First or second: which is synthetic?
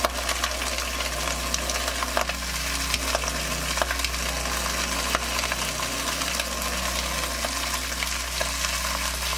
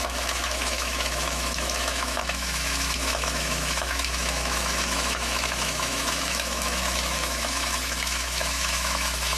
second